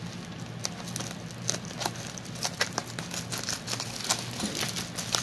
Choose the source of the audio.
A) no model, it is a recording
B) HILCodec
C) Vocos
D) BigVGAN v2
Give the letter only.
A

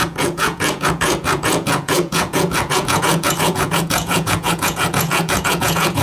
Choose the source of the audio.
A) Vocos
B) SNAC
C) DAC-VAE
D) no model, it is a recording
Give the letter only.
A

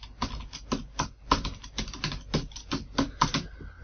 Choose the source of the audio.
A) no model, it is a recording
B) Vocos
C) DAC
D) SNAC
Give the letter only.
A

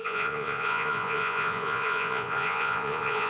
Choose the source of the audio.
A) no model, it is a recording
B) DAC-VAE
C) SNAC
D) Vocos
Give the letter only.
D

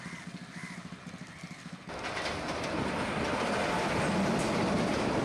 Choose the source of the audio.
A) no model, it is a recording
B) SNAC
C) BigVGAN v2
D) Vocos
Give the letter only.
A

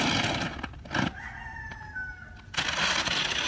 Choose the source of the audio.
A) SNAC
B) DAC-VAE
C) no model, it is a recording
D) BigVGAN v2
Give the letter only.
C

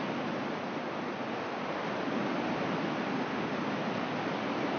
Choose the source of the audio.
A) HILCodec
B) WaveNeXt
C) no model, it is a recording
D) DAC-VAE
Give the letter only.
C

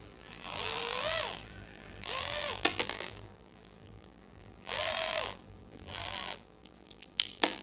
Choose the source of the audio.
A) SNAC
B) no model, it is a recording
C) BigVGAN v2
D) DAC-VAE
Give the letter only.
C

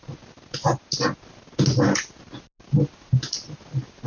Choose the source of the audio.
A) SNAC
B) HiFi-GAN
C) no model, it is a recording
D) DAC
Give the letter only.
C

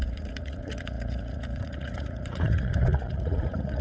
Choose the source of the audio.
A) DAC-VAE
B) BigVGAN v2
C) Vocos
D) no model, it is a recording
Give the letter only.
C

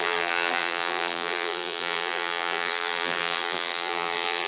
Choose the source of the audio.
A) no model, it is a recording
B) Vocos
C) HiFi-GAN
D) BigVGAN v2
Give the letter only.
D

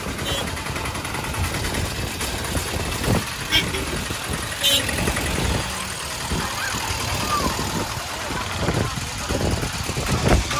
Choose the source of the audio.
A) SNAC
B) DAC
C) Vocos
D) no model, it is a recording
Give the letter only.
D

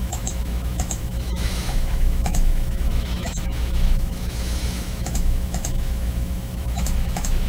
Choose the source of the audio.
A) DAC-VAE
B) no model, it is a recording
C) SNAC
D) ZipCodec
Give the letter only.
A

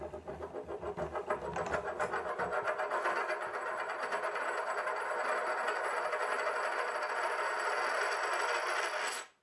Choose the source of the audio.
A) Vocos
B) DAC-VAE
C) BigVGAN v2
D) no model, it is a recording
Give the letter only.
D